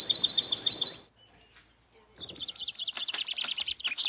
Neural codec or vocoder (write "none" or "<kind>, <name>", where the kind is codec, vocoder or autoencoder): none